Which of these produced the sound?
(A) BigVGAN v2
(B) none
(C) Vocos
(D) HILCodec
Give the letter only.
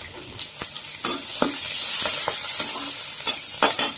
B